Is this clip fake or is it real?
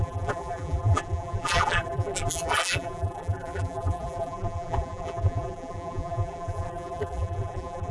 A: fake